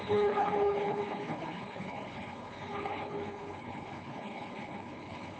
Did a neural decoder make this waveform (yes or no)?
yes